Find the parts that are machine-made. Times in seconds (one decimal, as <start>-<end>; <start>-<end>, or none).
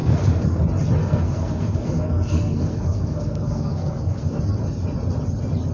0.0-0.6; 1.0-4.4